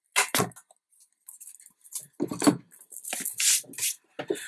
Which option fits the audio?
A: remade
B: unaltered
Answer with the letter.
B